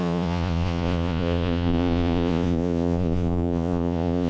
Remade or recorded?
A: remade